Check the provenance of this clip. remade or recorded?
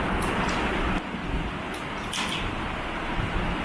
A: recorded